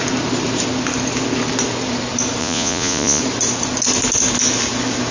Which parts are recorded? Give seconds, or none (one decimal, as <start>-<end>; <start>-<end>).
0.0-2.4; 3.2-5.1